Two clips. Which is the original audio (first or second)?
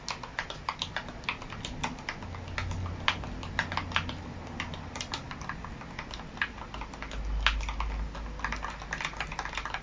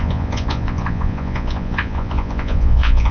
first